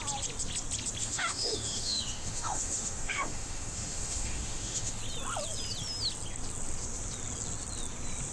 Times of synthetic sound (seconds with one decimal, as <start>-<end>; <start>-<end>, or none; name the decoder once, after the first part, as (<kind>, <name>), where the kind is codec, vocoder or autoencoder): 1.0-5.0 (autoencoder, DAC-VAE)

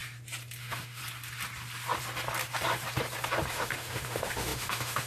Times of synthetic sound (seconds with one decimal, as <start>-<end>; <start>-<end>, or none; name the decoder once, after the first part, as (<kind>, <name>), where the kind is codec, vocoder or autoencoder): 0.6-1.0 (autoencoder, DAC-VAE); 3.5-5.1